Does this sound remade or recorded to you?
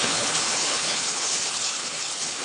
remade